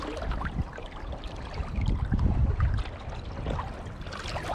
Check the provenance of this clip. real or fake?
real